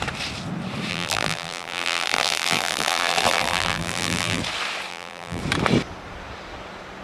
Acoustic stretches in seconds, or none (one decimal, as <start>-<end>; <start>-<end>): 0.0-0.9; 4.4-4.9; 5.4-7.0